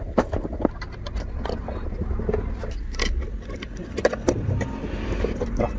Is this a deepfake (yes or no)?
no